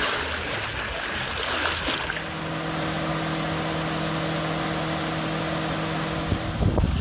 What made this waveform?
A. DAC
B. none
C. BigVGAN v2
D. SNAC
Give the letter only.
B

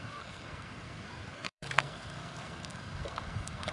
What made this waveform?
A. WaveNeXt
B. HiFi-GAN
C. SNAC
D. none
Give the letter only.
C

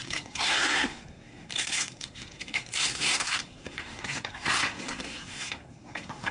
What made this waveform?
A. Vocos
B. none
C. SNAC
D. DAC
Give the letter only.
C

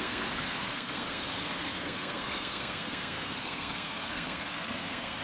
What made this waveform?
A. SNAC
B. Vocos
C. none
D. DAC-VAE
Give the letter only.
A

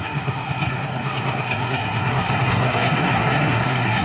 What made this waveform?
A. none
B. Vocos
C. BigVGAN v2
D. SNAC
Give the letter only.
D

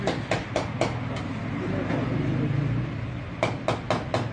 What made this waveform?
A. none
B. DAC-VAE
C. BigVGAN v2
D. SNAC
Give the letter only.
A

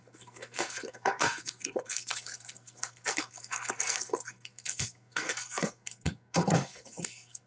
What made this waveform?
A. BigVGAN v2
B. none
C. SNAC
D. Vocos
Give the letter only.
C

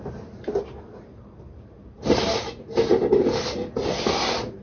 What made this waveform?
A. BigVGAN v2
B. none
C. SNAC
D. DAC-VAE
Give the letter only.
B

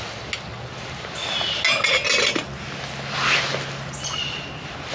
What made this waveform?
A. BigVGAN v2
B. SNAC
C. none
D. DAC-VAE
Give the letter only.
C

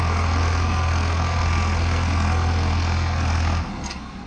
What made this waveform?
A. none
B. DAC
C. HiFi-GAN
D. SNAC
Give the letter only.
D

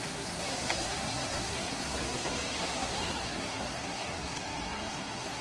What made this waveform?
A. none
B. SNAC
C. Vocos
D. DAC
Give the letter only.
B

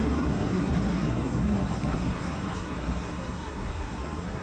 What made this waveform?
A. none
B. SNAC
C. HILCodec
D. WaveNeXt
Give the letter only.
B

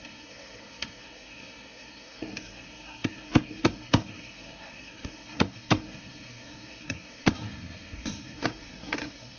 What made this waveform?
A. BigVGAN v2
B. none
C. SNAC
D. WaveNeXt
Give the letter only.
C